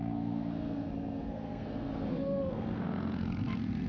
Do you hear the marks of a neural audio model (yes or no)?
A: yes